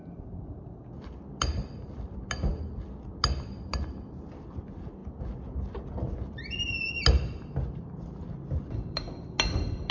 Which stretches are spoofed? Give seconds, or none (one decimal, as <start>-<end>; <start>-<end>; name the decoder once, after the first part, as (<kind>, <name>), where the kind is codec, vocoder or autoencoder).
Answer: none